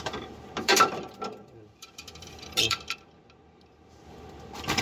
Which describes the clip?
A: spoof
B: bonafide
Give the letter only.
A